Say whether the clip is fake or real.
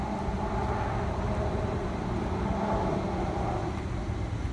real